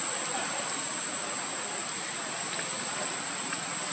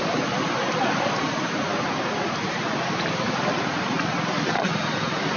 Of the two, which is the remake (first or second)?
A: second